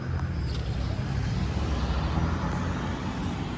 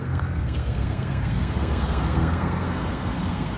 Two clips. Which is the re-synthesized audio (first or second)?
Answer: second